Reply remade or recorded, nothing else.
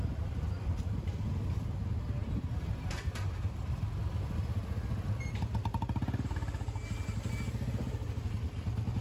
recorded